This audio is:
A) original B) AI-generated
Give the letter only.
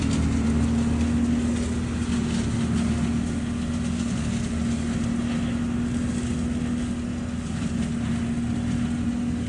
A